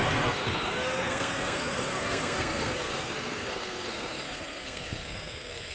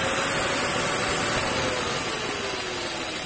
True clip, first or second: second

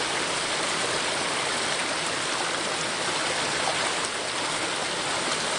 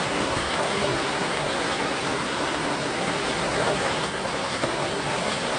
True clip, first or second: first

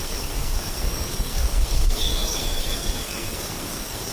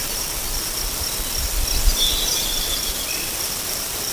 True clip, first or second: second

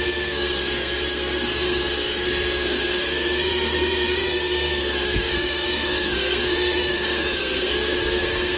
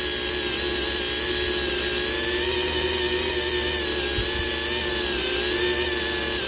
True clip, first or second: second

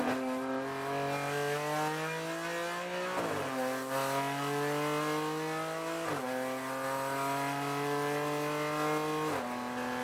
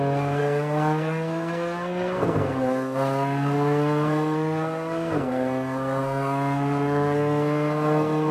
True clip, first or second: first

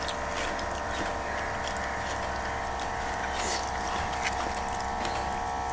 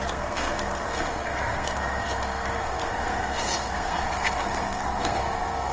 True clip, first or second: first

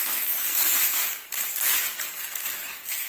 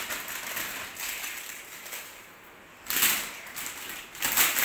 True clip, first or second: second